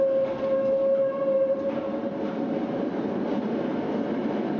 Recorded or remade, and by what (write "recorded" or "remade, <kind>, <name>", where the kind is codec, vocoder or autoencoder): recorded